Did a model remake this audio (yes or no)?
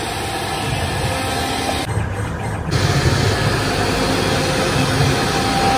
no